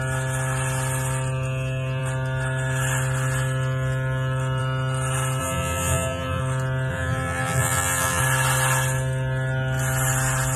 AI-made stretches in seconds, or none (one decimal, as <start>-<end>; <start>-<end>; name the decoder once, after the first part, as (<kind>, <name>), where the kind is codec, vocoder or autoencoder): 5.4-6.4 (vocoder, BigVGAN v2); 6.9-8.2